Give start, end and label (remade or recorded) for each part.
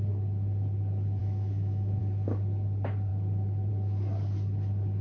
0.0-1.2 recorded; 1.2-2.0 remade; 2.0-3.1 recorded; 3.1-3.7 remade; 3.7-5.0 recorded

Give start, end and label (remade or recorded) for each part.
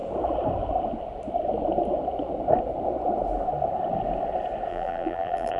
0.0-4.7 recorded; 4.7-5.6 remade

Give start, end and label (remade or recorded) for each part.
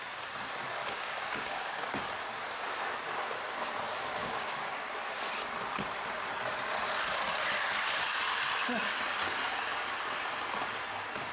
0.0-0.8 recorded; 0.8-2.0 remade; 2.0-4.2 recorded; 4.2-4.9 remade; 4.9-11.3 recorded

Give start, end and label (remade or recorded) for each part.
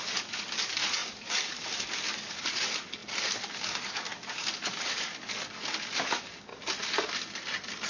0.0-6.5 remade; 6.5-7.9 recorded